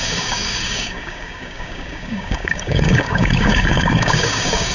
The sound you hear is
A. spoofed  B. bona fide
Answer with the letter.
A